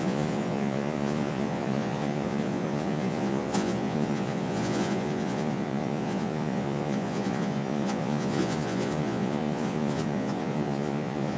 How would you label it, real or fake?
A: fake